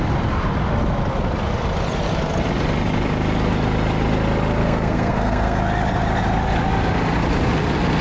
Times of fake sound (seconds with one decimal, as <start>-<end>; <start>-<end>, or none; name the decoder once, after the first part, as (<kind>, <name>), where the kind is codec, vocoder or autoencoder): 4.6-5.6 (codec, SNAC)

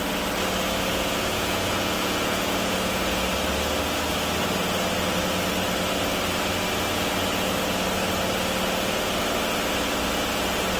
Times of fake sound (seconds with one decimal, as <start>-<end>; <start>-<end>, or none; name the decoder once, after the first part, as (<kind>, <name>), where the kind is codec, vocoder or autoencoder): 0.9-3.3 (vocoder, Vocos)

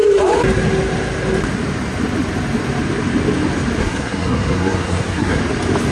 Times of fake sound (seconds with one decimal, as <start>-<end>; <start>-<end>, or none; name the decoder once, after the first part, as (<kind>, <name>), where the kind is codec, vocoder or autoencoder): 3.8-5.4 (codec, SNAC)

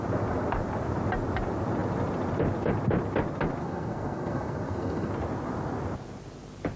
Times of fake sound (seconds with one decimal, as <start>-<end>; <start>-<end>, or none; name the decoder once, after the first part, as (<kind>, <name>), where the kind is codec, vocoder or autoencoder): 3.6-5.1 (codec, SNAC)

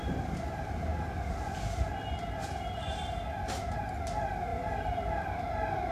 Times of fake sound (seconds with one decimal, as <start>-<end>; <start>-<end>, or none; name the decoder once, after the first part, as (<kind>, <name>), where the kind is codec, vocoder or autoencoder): none

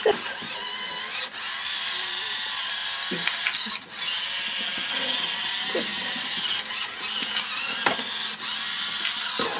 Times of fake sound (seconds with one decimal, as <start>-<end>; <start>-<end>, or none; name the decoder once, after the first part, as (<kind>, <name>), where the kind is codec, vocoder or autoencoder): none

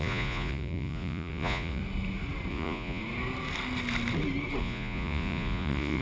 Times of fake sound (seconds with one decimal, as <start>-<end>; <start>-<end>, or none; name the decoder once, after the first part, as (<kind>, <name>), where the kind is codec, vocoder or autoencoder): 0.0-1.8 (vocoder, Vocos); 2.5-3.0; 4.6-6.0